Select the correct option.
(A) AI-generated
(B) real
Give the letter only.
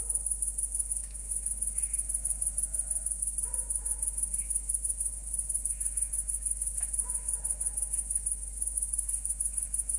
A